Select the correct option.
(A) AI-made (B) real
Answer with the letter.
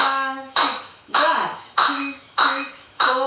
A